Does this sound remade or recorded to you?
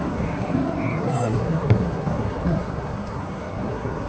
remade